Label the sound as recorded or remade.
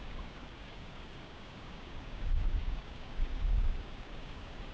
remade